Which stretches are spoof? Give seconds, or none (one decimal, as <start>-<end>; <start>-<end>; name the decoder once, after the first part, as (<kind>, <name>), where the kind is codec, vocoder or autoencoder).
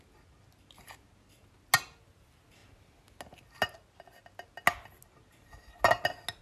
none